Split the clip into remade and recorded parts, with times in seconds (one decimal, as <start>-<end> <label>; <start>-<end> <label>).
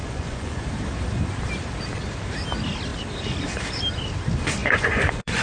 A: 0.0-0.7 remade; 0.7-4.6 recorded; 4.6-5.4 remade